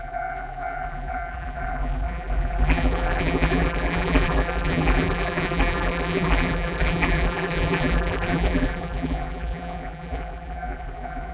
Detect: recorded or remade remade